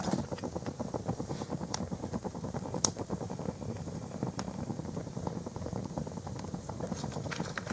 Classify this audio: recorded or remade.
remade